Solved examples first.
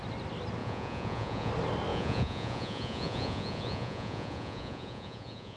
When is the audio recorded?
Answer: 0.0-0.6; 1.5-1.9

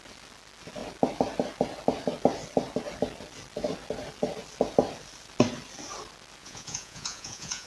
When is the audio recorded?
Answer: 0.0-6.4

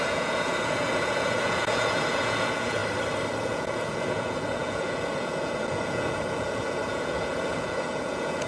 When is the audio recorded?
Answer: 2.8-3.4

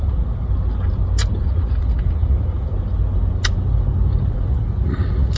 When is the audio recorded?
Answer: 0.5-1.4; 2.7-4.3

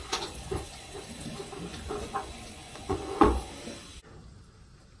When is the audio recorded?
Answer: 0.8-1.7; 3.4-5.0